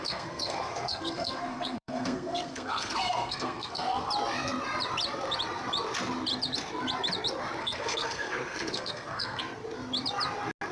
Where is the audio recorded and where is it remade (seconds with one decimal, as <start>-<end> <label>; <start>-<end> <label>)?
0.0-4.1 remade; 4.1-7.6 recorded; 7.6-9.4 remade; 9.4-10.7 recorded